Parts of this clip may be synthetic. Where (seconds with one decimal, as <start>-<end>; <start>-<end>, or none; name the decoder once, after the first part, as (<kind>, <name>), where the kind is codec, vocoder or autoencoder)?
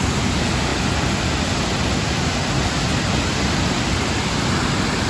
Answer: none